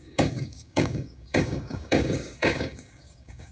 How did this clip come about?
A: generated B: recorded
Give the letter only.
A